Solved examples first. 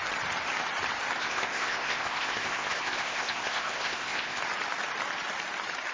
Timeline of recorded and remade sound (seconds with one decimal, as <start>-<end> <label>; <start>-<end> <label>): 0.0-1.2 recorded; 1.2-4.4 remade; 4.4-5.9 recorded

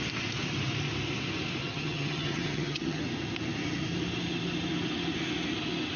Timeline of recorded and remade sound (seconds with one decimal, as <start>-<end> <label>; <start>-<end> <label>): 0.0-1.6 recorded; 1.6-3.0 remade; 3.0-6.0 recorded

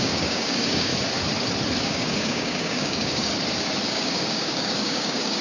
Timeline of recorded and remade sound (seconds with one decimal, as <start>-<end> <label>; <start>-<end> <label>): 0.0-0.9 remade; 0.9-1.8 recorded; 1.8-3.3 remade; 3.3-3.9 recorded; 3.9-5.4 remade

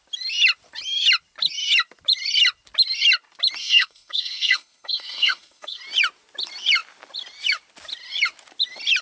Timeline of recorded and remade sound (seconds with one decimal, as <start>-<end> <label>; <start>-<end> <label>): 0.0-3.6 recorded; 3.6-5.8 remade; 5.8-9.0 recorded

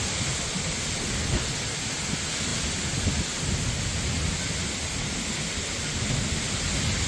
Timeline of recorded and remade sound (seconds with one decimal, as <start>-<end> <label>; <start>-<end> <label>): 0.0-7.1 recorded

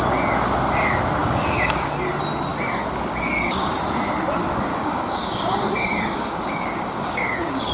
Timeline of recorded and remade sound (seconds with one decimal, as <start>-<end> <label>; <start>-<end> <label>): 0.0-1.2 recorded; 1.2-1.9 remade; 1.9-4.7 recorded; 4.7-7.7 remade